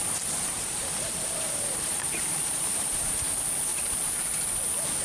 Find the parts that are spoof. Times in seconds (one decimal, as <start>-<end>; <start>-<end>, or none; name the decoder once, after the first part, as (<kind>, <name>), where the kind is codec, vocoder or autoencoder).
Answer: 0.0-3.0 (vocoder, BigVGAN v2); 3.7-4.3